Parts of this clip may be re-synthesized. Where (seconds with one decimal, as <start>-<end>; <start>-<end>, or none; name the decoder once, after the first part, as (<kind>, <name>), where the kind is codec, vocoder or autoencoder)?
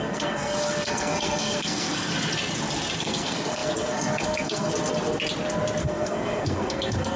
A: 0.0-2.1 (codec, SNAC); 3.0-4.7; 5.8-7.2